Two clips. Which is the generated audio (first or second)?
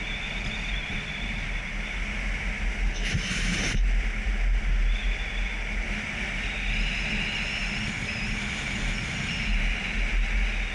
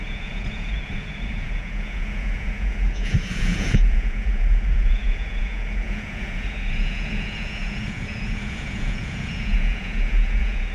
second